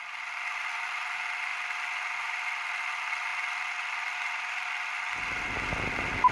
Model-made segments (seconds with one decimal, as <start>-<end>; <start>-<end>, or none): none